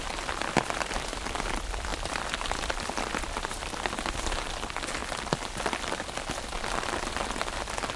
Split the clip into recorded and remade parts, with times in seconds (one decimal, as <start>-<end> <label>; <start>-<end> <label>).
0.0-8.0 recorded